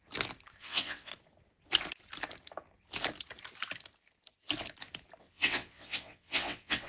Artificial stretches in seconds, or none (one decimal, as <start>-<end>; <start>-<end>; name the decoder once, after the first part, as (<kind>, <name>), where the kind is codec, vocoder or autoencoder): 0.6-1.1 (vocoder, WaveNeXt); 5.2-6.9